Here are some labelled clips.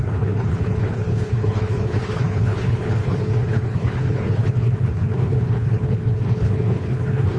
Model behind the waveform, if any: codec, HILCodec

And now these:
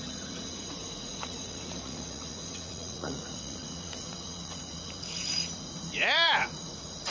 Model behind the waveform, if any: vocoder, Vocos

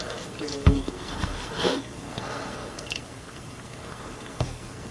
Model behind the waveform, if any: codec, SNAC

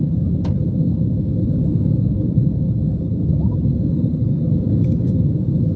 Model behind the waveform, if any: codec, DAC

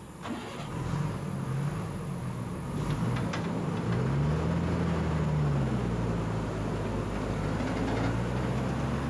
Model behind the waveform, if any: none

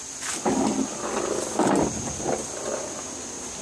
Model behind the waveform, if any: none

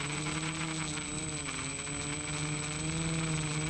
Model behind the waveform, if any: none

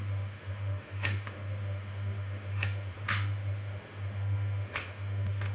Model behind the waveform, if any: autoencoder, DAC-VAE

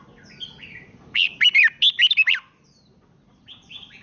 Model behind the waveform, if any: none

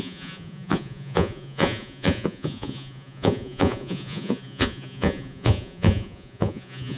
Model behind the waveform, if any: vocoder, Vocos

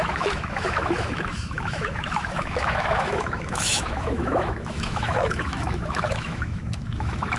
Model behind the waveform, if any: autoencoder, DAC-VAE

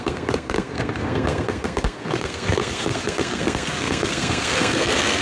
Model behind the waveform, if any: codec, SNAC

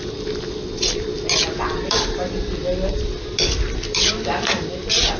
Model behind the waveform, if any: none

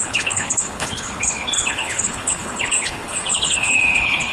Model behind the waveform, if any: codec, HILCodec